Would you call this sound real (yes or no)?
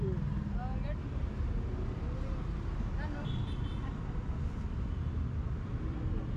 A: yes